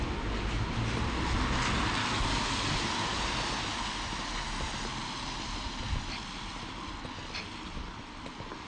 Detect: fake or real real